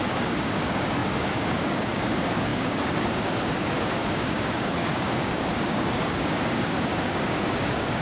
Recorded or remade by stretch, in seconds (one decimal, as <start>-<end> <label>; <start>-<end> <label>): 0.0-8.0 remade

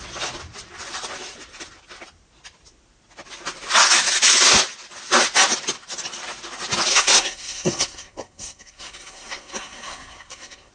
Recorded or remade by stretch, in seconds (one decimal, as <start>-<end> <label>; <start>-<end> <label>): 0.0-6.9 recorded; 6.9-10.7 remade

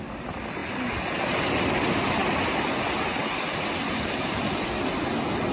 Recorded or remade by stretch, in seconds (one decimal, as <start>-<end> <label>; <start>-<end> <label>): 0.0-5.5 recorded

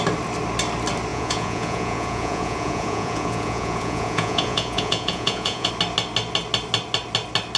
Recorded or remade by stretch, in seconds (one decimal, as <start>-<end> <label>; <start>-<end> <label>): 0.0-1.1 recorded; 1.1-5.7 remade; 5.7-7.6 recorded

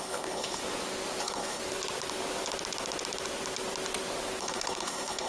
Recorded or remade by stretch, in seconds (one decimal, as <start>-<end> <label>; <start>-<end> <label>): 0.0-0.6 remade; 0.6-1.2 recorded; 1.2-1.6 remade; 1.6-4.4 recorded; 4.4-5.3 remade